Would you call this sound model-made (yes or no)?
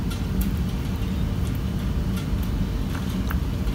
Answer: no